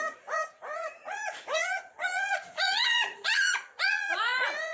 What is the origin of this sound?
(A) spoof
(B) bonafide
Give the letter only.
A